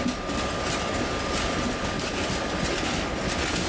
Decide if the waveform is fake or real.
real